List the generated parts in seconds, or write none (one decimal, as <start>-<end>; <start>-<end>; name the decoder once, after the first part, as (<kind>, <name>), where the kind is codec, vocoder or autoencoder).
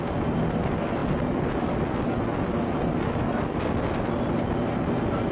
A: none